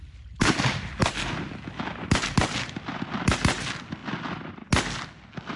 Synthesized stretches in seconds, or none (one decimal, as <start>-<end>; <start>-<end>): none